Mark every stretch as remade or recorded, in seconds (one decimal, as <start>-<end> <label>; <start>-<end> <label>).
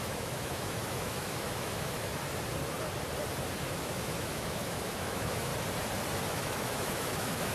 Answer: 0.0-2.1 remade; 2.1-3.7 recorded; 3.7-5.5 remade; 5.5-6.3 recorded; 6.3-7.5 remade